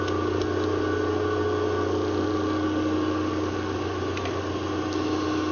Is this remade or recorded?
recorded